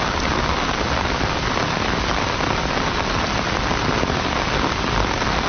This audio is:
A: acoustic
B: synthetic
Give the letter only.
A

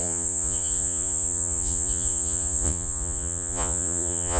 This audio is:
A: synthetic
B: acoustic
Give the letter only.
A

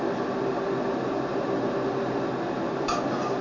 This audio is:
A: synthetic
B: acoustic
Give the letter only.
B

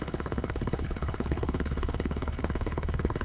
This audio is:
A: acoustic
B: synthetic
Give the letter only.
B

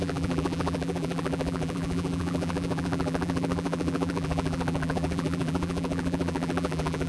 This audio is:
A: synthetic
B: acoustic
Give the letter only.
A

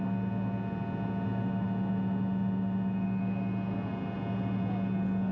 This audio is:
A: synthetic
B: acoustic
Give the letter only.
B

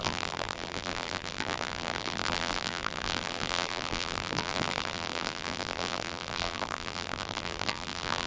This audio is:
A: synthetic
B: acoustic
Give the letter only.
A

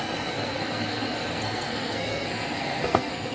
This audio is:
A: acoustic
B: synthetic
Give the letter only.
B